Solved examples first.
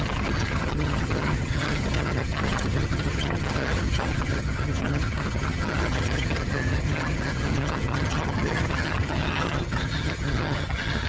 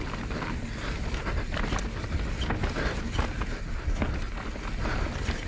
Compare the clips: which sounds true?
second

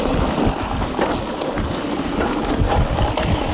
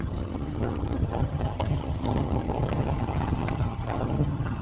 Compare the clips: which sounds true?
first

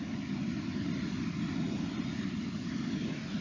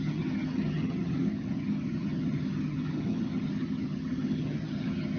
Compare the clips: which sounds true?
first